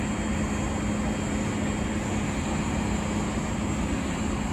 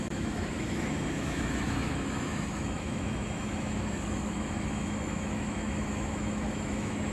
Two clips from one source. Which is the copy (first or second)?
second